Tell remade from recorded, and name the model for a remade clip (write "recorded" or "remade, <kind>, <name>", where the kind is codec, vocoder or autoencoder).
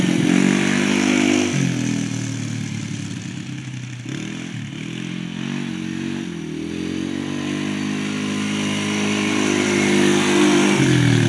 recorded